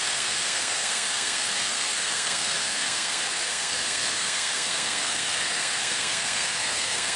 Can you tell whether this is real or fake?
fake